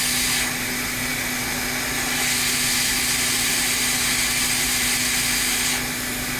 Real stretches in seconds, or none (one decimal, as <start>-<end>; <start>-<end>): 0.0-6.4